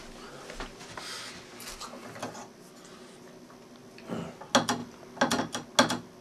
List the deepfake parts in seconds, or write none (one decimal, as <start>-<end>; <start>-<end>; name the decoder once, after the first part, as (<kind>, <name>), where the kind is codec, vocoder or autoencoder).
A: none